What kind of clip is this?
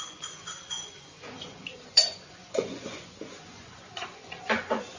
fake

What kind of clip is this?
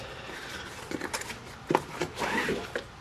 real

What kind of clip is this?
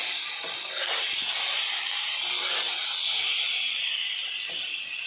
real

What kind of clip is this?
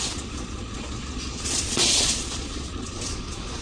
fake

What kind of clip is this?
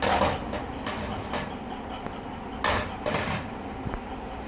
real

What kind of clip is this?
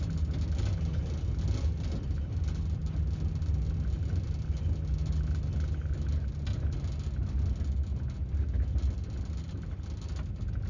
real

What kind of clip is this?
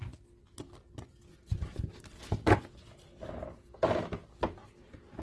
real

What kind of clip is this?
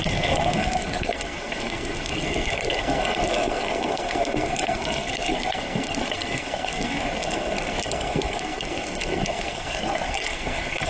fake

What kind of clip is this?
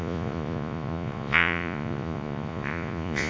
fake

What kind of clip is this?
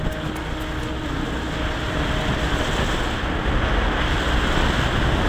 real